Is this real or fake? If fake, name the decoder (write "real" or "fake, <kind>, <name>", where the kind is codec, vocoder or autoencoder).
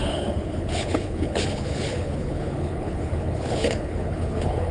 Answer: fake, codec, HILCodec